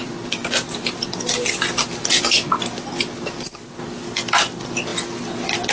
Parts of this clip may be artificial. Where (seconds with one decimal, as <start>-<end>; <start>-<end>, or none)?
none